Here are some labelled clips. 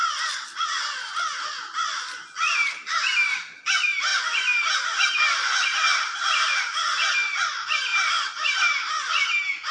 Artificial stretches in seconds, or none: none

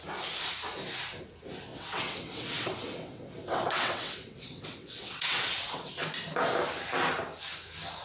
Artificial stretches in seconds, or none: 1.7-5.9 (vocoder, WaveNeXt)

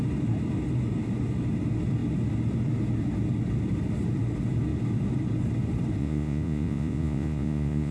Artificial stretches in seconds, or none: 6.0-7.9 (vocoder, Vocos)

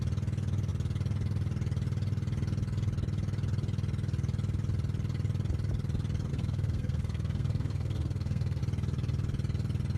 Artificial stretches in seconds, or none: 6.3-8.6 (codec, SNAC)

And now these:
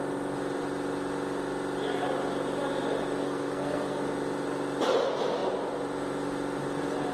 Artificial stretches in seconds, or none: 3.2-4.0 (codec, SNAC)

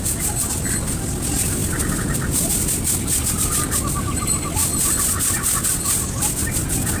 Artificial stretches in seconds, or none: none

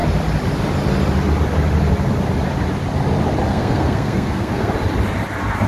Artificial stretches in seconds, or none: 3.5-4.7 (codec, SNAC)